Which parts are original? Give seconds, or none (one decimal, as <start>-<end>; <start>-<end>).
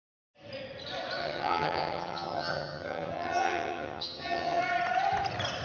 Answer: 0.0-1.2; 4.6-5.6